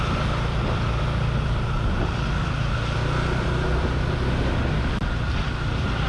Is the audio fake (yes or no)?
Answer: no